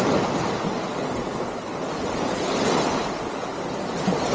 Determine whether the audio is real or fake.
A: real